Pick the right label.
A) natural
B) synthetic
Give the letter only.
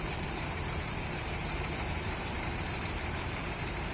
B